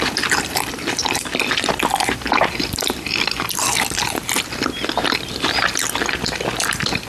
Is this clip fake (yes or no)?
yes